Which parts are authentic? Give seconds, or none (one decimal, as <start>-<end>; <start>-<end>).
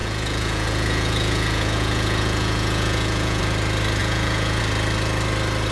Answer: 3.4-4.0; 4.6-5.7